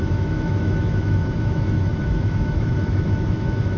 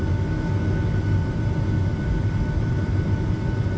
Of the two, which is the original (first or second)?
second